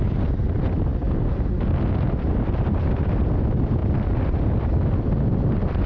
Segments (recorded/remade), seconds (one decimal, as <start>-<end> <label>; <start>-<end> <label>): 0.0-5.9 recorded